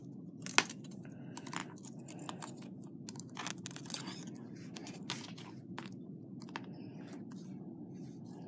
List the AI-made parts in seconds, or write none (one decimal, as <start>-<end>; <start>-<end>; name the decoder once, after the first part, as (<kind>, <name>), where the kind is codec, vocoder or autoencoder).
none